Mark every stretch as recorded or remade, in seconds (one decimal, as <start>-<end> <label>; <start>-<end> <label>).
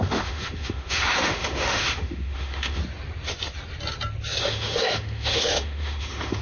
0.0-2.8 remade; 2.8-4.4 recorded; 4.4-6.4 remade